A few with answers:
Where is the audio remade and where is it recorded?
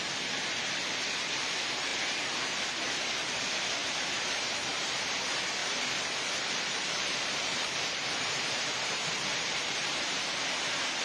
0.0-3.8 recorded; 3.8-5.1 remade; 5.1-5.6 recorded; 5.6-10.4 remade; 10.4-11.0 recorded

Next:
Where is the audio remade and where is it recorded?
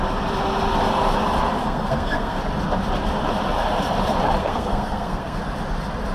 0.0-1.6 recorded; 1.6-2.4 remade; 2.4-4.4 recorded; 4.4-5.4 remade; 5.4-6.1 recorded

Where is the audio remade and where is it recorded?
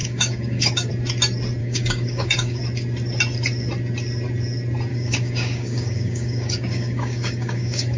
0.0-0.9 remade; 0.9-1.6 recorded; 1.6-2.6 remade; 2.6-4.9 recorded; 4.9-8.0 remade